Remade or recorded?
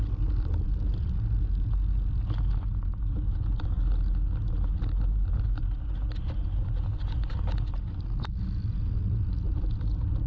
recorded